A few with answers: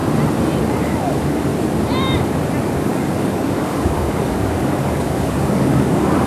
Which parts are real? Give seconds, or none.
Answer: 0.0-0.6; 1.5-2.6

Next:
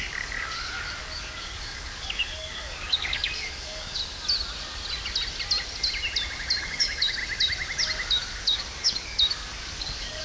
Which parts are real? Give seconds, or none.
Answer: 4.0-6.6; 7.2-8.1

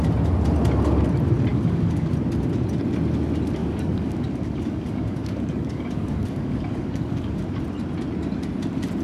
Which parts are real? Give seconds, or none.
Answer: 0.0-1.5; 2.1-3.6; 7.6-9.0